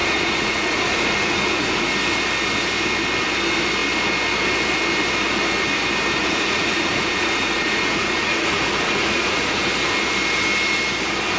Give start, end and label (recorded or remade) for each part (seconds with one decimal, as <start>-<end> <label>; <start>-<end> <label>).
0.0-1.9 remade; 1.9-6.2 recorded; 6.2-9.6 remade; 9.6-11.4 recorded

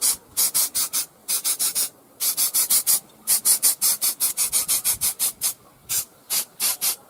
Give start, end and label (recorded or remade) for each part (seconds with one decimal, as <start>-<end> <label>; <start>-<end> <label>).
0.0-1.2 recorded; 1.2-4.5 remade; 4.5-5.8 recorded; 5.8-7.1 remade

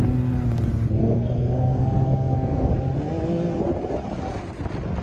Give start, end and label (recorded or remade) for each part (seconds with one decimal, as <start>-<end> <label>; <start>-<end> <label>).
0.0-1.0 recorded; 1.0-2.7 remade; 2.7-5.0 recorded

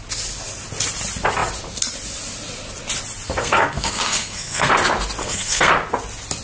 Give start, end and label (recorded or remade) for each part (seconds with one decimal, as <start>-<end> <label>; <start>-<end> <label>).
0.0-3.4 recorded; 3.4-4.7 remade; 4.7-5.2 recorded; 5.2-5.7 remade; 5.7-6.4 recorded

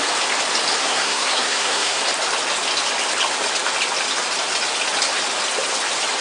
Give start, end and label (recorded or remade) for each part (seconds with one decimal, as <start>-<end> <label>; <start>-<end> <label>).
0.0-0.8 recorded; 0.8-2.0 remade; 2.0-6.2 recorded

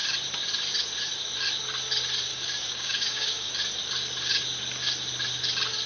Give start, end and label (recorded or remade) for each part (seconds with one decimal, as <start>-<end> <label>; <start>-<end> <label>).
0.0-2.3 recorded; 2.3-3.5 remade; 3.5-5.9 recorded